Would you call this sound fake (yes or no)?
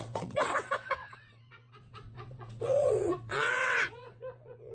yes